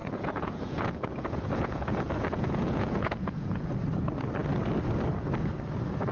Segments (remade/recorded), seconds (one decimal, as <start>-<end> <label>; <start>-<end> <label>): 0.0-3.7 remade; 3.7-6.1 recorded